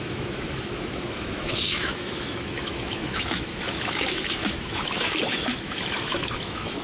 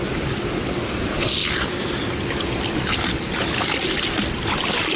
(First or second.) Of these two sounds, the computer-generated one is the first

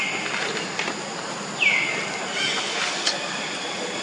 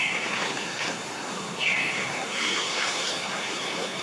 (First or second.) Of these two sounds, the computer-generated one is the second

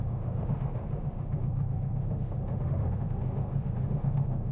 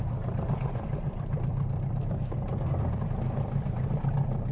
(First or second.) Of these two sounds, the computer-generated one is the first